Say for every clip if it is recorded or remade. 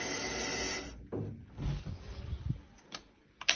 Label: recorded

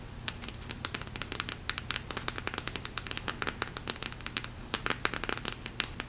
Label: recorded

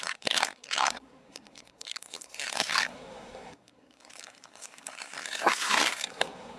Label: remade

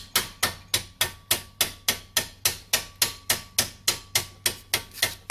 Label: recorded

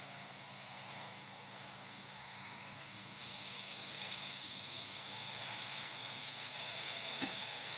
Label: remade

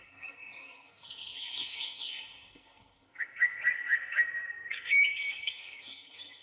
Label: remade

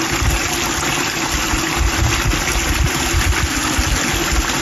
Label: recorded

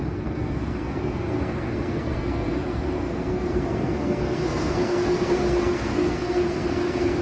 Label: remade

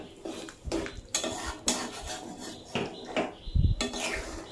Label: recorded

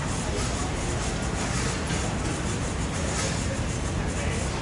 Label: recorded